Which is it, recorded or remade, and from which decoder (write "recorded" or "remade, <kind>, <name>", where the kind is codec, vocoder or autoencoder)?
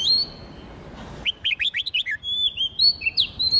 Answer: recorded